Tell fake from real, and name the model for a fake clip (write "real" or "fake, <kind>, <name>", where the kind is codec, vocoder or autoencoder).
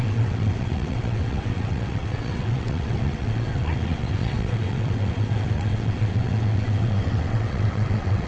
fake, vocoder, WaveNeXt